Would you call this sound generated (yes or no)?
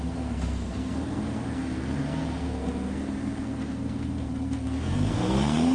yes